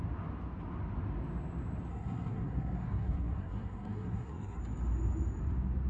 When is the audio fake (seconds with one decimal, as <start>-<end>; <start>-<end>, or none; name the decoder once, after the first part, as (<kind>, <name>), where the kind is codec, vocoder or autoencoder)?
1.9-4.6 (codec, SNAC)